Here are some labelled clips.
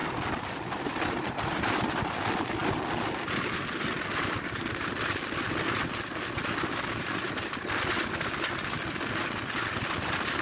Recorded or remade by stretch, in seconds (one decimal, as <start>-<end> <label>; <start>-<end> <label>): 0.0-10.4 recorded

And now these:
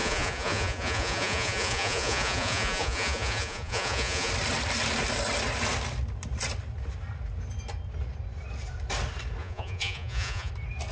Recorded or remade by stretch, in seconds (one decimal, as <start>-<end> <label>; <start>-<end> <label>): 0.0-4.3 remade; 4.3-9.4 recorded; 9.4-10.5 remade; 10.5-10.9 recorded

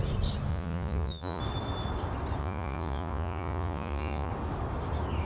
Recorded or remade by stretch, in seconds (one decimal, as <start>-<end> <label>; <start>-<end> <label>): 0.0-0.5 recorded; 0.5-1.4 remade; 1.4-2.4 recorded; 2.4-4.3 remade; 4.3-5.2 recorded